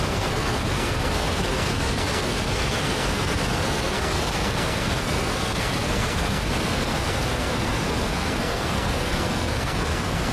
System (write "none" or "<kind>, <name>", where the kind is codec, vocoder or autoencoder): codec, SNAC